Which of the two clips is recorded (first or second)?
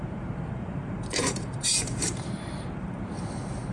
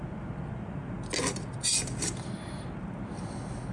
second